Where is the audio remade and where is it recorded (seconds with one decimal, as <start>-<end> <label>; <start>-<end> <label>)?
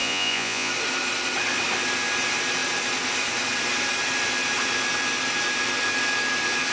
0.0-0.7 remade; 0.7-6.7 recorded